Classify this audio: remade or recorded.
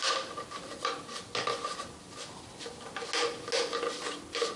recorded